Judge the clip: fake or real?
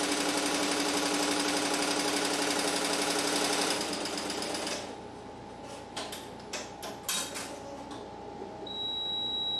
real